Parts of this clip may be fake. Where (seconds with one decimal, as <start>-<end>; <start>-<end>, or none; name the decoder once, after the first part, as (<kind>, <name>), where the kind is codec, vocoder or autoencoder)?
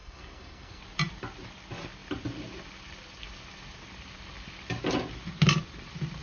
0.0-0.8 (codec, SNAC)